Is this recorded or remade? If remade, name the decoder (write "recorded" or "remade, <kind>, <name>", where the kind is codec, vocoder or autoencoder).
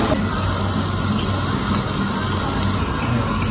recorded